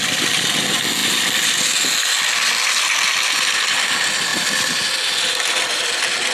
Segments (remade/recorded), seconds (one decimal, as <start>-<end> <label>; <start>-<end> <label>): 0.0-6.3 recorded